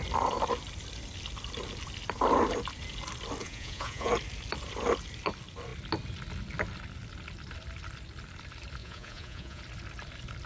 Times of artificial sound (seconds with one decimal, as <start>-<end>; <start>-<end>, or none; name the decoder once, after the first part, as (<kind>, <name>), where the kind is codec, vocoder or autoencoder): 3.4-4.1 (vocoder, Vocos); 8.8-9.6